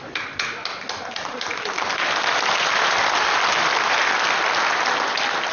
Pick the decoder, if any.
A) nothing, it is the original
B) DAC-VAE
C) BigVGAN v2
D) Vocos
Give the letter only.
A